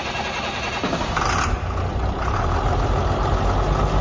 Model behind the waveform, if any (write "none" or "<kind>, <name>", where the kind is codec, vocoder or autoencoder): none